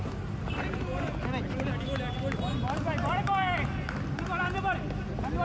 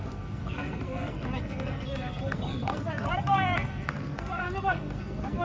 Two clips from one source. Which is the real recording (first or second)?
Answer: first